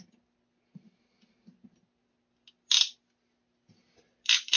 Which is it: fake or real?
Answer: real